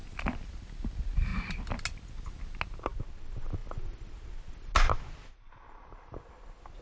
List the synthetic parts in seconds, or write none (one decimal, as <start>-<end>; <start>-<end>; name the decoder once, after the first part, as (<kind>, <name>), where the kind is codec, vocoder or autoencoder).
none